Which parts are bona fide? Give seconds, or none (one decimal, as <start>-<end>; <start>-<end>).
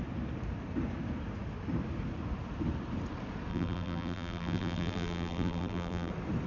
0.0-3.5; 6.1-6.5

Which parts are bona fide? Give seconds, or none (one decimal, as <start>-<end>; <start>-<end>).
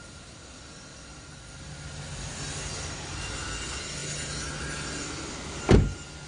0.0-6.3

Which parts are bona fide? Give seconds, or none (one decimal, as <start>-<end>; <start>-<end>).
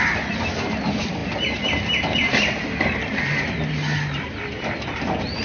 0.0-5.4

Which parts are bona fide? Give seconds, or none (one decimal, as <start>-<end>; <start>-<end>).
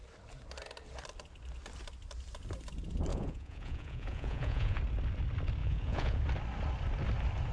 0.0-3.1; 4.8-5.6; 6.2-7.5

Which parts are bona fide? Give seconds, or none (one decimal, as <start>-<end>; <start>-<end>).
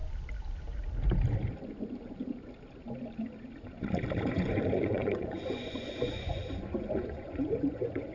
0.0-4.3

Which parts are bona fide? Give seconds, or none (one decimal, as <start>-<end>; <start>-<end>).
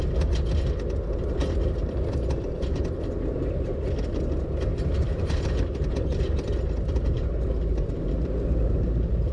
0.0-4.7; 8.2-9.3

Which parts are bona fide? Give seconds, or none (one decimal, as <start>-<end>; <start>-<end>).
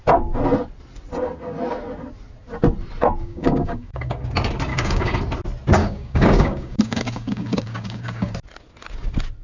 0.0-3.2; 4.3-4.7; 5.2-5.8; 8.3-9.4